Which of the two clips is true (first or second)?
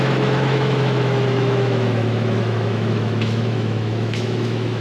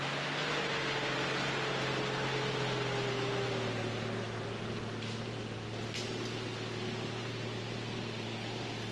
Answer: second